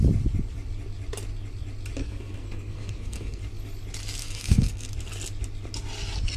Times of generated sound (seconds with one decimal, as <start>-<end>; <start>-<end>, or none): 2.0-3.4; 4.2-4.9